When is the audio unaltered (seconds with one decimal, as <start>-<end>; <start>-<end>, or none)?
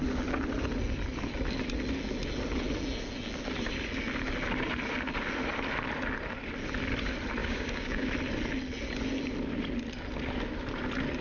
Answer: 0.0-7.4; 8.1-11.2